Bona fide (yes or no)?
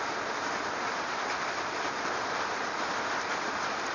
no